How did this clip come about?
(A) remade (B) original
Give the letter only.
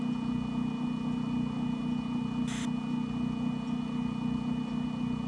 B